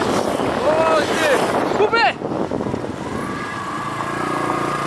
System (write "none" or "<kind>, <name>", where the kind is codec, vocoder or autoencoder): none